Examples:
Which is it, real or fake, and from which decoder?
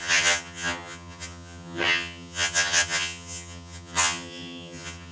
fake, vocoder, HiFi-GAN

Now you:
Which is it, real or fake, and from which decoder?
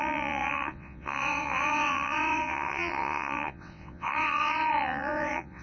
fake, vocoder, WaveNeXt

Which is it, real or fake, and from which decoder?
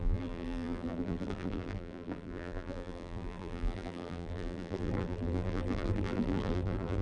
fake, vocoder, BigVGAN v2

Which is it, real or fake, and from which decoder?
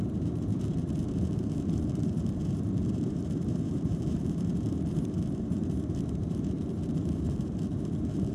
fake, vocoder, BigVGAN v2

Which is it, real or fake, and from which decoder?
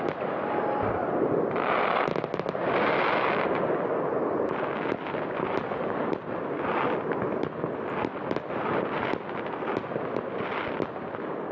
real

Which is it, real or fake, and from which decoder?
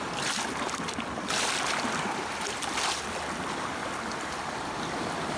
real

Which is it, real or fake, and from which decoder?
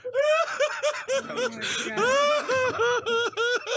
real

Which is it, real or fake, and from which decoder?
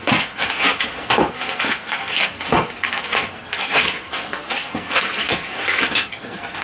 fake, codec, SNAC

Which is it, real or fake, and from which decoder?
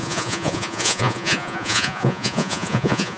fake, vocoder, Vocos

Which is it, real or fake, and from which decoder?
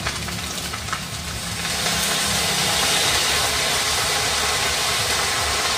real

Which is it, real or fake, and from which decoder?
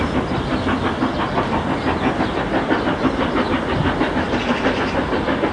real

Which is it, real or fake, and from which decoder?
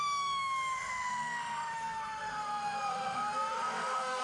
fake, autoencoder, DAC-VAE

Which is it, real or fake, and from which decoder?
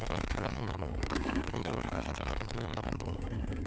fake, codec, SNAC